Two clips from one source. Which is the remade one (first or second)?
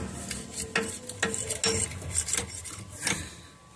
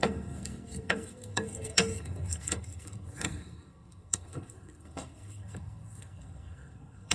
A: second